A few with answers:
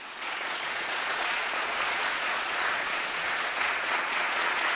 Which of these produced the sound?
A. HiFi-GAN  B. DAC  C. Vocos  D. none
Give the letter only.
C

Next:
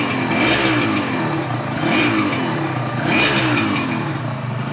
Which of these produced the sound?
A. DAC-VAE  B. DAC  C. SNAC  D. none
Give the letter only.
D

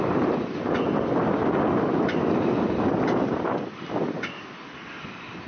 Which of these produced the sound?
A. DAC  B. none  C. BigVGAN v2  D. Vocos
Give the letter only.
B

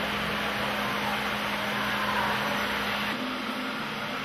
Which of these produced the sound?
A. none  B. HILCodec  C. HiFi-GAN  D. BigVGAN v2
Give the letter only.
A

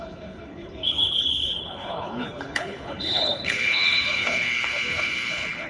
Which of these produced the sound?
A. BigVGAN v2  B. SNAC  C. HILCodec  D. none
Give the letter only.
C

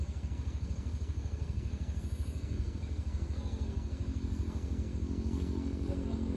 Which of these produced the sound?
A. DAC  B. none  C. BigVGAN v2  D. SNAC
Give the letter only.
D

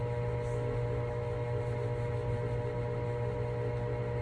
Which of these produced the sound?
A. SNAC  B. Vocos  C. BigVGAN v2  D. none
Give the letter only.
D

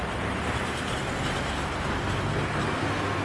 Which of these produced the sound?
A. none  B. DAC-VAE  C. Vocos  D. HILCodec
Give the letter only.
A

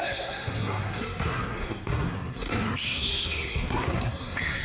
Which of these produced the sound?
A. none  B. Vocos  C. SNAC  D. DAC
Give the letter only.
C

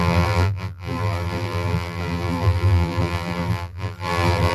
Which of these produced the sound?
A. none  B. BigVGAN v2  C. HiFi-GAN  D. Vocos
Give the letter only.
B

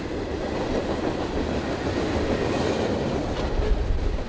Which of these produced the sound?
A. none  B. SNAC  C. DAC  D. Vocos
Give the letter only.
A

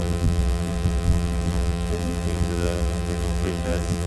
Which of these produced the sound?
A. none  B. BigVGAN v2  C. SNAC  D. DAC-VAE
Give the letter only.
B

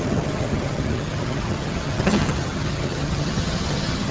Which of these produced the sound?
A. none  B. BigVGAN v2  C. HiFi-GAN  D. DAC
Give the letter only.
C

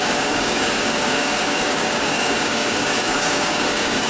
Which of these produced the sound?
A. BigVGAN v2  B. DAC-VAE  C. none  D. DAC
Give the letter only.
D